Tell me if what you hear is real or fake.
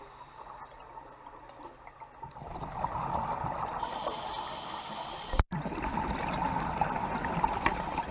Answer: real